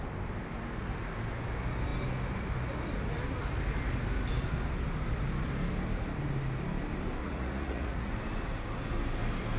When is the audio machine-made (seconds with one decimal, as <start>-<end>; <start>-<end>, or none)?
7.2-8.1